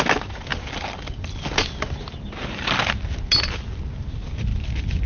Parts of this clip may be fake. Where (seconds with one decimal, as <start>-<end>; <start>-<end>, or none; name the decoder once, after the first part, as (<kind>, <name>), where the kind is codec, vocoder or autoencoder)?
none